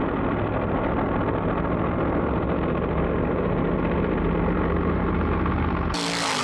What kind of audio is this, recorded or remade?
recorded